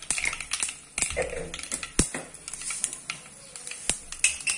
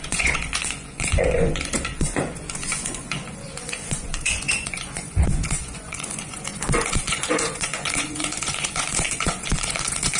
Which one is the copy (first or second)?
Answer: second